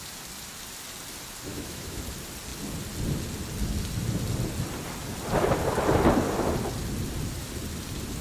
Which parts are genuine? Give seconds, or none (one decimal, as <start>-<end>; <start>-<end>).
0.0-1.5; 2.0-8.2